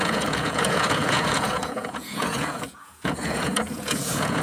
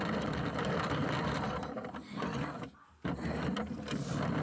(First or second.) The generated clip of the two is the first